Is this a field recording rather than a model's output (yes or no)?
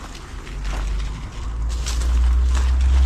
yes